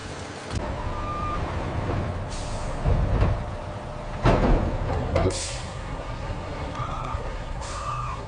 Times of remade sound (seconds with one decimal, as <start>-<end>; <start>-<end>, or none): 4.9-8.3